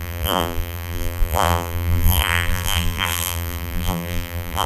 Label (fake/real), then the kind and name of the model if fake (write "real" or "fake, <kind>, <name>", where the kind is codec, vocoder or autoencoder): fake, vocoder, BigVGAN v2